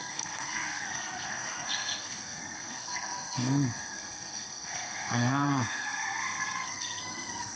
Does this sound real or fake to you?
fake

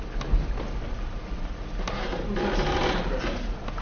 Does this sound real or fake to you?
real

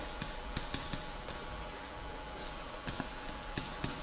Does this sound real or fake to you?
fake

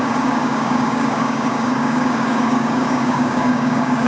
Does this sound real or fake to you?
fake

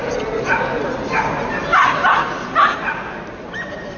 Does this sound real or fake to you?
real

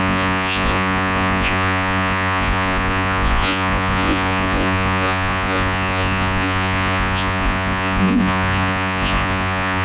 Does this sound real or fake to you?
fake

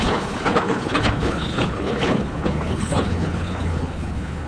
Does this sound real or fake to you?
fake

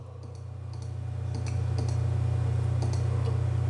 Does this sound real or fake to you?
real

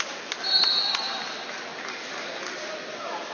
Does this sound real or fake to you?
real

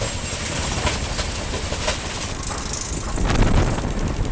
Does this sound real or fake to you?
real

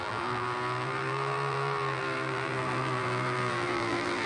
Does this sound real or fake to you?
fake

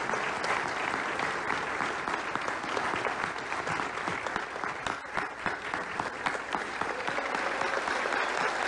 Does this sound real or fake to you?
real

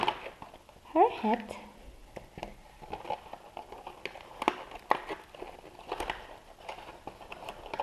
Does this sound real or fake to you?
real